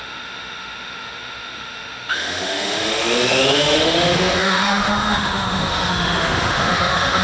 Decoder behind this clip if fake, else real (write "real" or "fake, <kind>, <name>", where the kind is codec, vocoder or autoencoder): fake, autoencoder, DAC-VAE